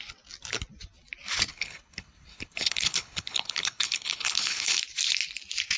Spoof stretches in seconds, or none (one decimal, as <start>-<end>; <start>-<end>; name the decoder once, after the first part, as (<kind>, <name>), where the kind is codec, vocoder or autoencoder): 1.5-4.8 (codec, HILCodec)